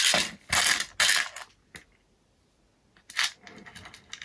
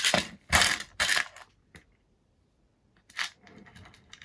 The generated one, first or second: second